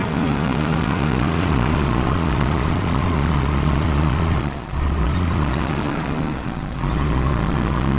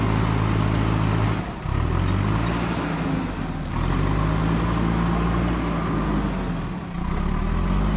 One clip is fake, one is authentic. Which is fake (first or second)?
first